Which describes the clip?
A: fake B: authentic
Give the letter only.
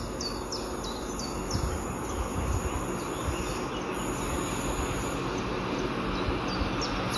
B